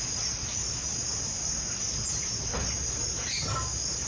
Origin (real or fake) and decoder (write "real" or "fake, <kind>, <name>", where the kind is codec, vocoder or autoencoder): real